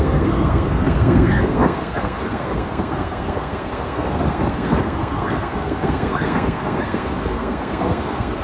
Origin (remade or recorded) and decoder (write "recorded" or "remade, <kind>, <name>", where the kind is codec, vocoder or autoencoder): remade, codec, SNAC